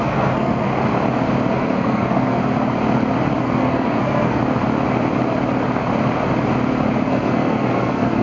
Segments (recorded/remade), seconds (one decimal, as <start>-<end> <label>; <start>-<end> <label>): 0.0-0.7 remade; 0.7-1.5 recorded; 1.5-2.4 remade; 2.4-3.4 recorded; 3.4-4.4 remade; 4.4-7.1 recorded; 7.1-8.2 remade